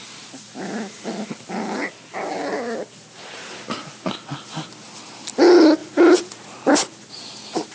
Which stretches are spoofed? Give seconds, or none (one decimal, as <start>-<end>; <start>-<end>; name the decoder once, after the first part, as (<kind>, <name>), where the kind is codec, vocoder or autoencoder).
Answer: 5.8-6.7 (vocoder, BigVGAN v2)